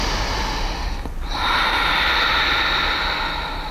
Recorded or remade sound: recorded